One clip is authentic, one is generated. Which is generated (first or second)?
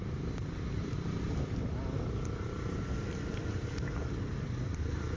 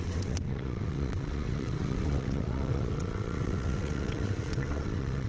second